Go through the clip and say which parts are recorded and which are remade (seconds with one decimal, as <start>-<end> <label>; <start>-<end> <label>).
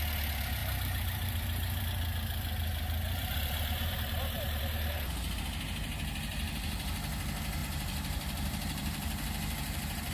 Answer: 0.0-0.6 recorded; 0.6-1.8 remade; 1.8-3.3 recorded; 3.3-4.6 remade; 4.6-7.6 recorded; 7.6-10.1 remade